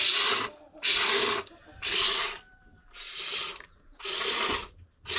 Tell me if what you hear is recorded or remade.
remade